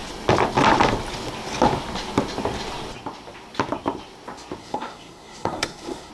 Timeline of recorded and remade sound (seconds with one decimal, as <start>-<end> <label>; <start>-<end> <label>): 0.0-4.6 recorded; 4.6-6.1 remade